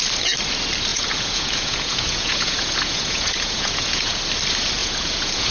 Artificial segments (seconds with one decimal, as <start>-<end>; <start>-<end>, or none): 0.9-4.2; 4.8-5.5